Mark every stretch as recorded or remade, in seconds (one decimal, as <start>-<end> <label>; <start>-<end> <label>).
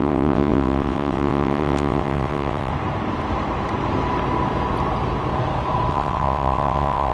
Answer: 0.0-2.7 remade; 2.7-5.9 recorded; 5.9-7.1 remade